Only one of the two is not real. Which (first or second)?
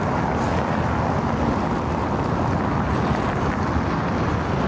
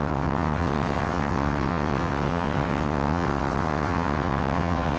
second